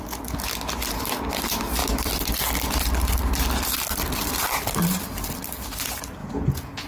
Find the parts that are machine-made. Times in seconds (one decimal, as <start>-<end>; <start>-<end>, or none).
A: 6.2-6.9